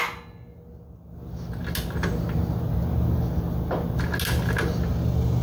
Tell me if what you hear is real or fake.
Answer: real